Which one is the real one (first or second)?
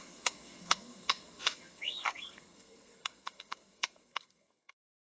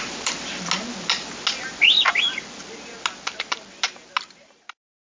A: second